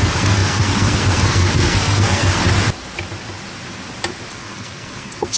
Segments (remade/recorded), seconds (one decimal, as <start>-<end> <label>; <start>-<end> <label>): 0.0-2.4 remade; 2.4-4.3 recorded; 4.3-5.4 remade